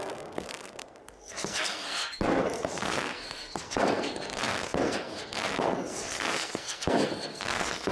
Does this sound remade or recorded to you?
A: remade